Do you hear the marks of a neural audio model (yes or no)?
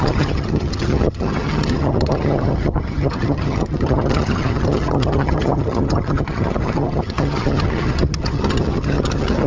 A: yes